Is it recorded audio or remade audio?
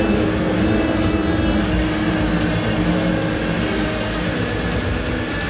recorded